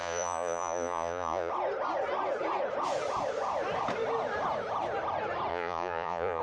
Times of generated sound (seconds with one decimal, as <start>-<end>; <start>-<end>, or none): 0.0-1.5; 5.5-6.4